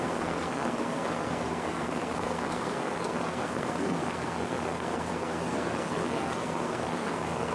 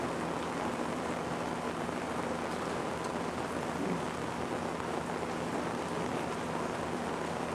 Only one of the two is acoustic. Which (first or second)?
second